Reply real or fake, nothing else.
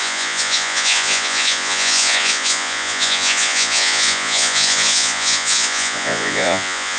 fake